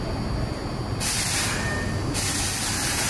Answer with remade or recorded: recorded